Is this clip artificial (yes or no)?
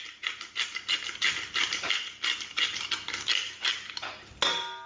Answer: no